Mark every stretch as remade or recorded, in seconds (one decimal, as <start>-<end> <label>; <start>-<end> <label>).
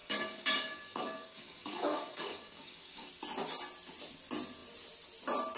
0.0-3.1 remade; 3.1-5.6 recorded